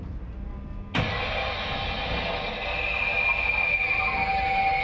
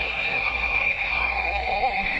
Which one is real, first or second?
first